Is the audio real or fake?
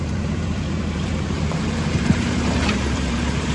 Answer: fake